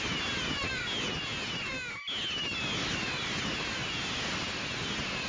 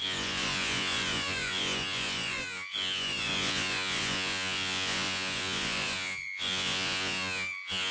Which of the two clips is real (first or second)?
first